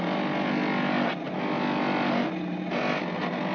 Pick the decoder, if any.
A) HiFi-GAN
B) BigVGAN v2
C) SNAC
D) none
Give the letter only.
D